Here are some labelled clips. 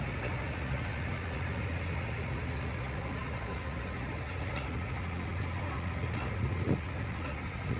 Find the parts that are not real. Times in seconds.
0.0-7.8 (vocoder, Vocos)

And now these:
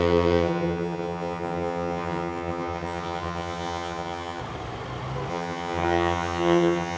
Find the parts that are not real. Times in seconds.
0.0-4.4 (vocoder, HiFi-GAN); 5.3-7.0

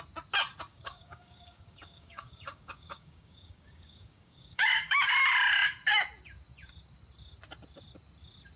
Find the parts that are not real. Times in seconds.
0.7-5.1 (codec, DAC)

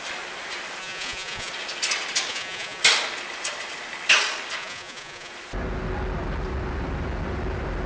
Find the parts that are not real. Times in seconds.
0.8-1.5 (vocoder, Vocos); 2.3-2.8; 4.6-5.3

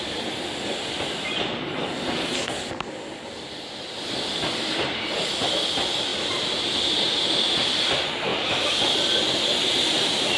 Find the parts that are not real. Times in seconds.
6.1-7.1 (vocoder, BigVGAN v2); 8.3-8.8

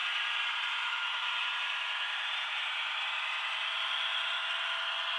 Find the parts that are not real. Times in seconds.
0.0-3.1 (vocoder, BigVGAN v2)

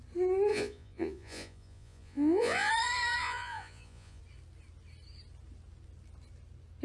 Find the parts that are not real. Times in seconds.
0.5-2.7 (vocoder, Vocos); 3.2-4.2

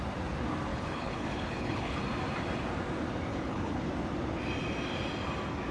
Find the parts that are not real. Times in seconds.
0.7-2.0 (codec, HILCodec); 3.3-3.9